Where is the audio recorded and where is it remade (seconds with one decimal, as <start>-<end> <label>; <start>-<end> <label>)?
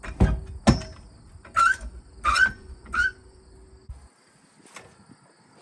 0.0-2.3 recorded; 2.3-3.4 remade; 3.4-5.6 recorded